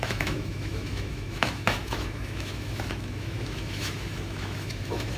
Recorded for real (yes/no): no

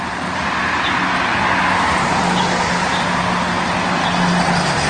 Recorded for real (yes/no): yes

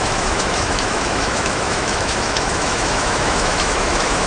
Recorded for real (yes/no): no